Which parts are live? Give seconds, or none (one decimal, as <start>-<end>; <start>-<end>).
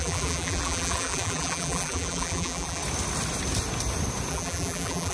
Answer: 2.8-4.3